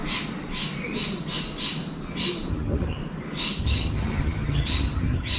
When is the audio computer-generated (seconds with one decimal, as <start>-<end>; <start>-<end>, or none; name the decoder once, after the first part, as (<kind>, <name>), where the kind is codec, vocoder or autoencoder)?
2.5-3.0 (vocoder, HiFi-GAN); 3.6-5.4